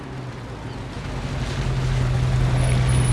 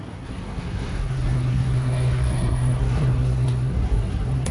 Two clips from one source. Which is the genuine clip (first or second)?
first